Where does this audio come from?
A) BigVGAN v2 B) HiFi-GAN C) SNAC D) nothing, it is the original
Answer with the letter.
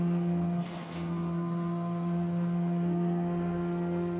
C